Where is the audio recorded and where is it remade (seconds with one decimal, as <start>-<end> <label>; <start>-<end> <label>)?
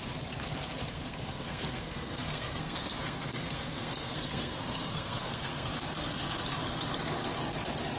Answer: 0.0-0.9 recorded; 0.9-5.7 remade; 5.7-8.0 recorded